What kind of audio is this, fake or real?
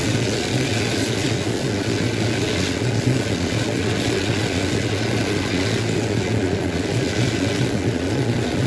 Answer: fake